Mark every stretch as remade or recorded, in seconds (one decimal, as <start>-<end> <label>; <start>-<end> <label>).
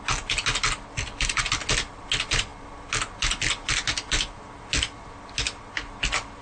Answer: 0.0-6.4 recorded